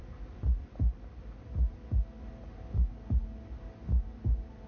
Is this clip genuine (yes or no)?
yes